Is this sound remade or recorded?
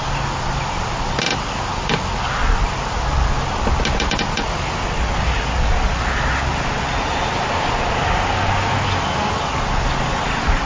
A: recorded